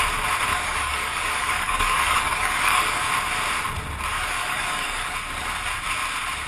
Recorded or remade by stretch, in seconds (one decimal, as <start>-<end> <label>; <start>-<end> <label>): 0.0-0.5 recorded; 0.5-3.1 remade; 3.1-4.1 recorded; 4.1-5.1 remade; 5.1-6.5 recorded